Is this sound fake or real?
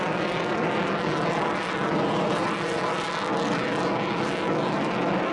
real